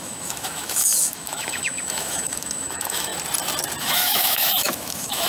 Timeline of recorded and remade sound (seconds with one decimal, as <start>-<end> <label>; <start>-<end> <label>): 0.0-3.1 remade; 3.1-3.8 recorded; 3.8-5.3 remade